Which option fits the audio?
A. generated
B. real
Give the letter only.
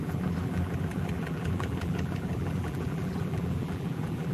A